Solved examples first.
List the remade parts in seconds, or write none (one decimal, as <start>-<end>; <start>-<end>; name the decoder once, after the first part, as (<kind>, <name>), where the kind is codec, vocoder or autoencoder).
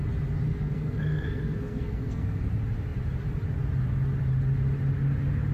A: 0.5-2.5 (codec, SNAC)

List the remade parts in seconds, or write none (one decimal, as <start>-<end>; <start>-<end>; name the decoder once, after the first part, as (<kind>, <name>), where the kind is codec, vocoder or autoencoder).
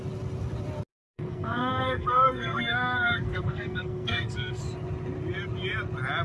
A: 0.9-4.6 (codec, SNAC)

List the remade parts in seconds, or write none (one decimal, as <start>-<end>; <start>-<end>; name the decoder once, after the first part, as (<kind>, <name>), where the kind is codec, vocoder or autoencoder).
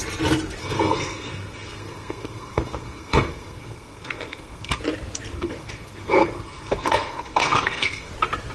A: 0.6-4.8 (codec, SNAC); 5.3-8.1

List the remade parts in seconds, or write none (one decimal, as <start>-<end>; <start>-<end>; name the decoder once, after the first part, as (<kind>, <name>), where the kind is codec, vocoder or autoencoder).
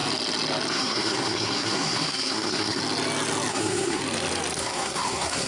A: 0.7-2.8 (codec, SNAC); 3.5-4.0; 4.6-5.5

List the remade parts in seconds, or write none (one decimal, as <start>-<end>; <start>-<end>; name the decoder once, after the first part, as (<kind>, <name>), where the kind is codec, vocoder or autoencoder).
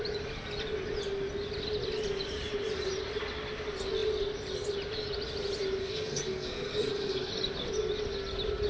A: 5.8-7.3 (codec, SNAC)